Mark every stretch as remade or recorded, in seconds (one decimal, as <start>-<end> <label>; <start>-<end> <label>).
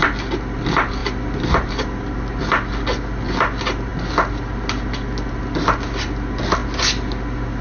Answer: 0.0-7.6 recorded